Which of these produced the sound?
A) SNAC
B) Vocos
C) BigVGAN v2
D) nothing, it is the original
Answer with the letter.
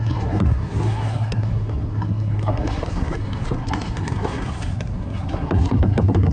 A